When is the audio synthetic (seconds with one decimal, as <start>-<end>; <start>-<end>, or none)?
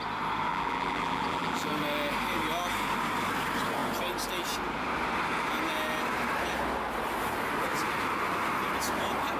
0.5-1.7